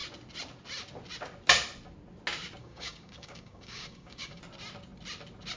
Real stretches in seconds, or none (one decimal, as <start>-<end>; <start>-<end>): 0.0-2.6; 4.4-5.6